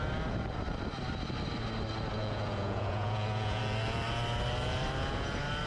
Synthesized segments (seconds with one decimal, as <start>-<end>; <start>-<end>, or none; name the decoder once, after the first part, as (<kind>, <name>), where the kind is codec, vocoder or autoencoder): 2.2-3.6 (vocoder, Vocos)